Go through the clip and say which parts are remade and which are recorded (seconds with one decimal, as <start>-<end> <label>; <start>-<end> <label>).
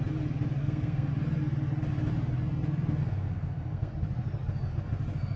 0.0-0.6 recorded; 0.6-1.1 remade; 1.1-3.0 recorded; 3.0-3.9 remade; 3.9-5.4 recorded